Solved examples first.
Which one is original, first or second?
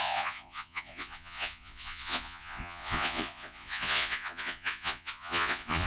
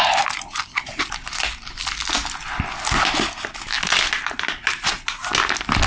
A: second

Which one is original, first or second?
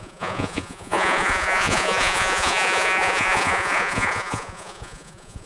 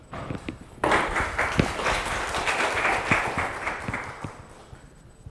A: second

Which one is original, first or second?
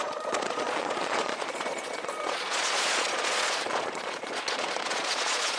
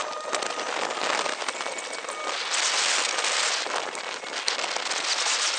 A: second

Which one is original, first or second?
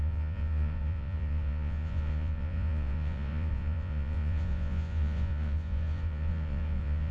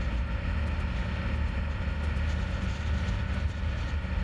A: second